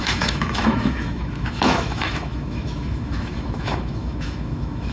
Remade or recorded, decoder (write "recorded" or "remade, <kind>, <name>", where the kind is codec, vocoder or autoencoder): remade, autoencoder, DAC-VAE